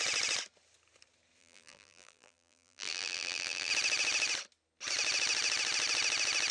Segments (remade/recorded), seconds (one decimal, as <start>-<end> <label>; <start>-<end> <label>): 0.0-1.4 recorded; 1.4-3.7 remade; 3.7-6.5 recorded